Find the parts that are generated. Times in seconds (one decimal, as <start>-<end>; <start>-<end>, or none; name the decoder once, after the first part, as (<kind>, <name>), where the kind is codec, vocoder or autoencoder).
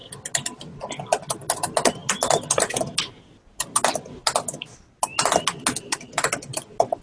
none